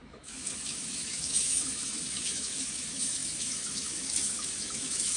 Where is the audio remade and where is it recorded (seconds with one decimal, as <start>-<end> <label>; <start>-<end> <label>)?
0.0-5.2 remade

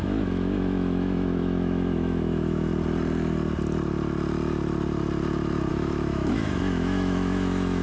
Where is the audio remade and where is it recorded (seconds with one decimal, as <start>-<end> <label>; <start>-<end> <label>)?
0.0-2.7 remade; 2.7-5.7 recorded; 5.7-7.8 remade